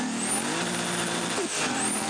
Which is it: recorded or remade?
recorded